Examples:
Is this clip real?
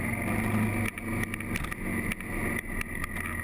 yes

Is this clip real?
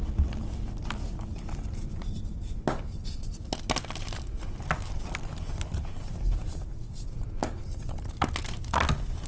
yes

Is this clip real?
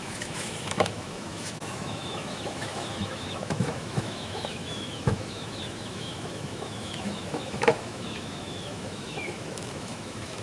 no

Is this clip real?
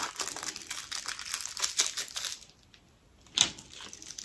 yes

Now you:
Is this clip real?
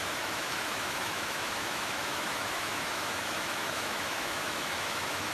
no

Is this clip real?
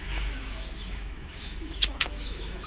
no